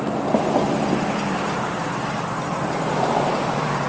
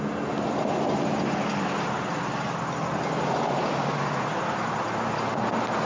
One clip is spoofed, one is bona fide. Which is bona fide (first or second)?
second